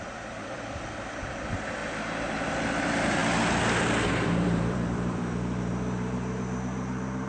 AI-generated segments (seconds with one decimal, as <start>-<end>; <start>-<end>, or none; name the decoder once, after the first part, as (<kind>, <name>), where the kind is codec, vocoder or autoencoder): 0.0-1.8 (vocoder, BigVGAN v2); 2.8-3.2; 4.1-7.3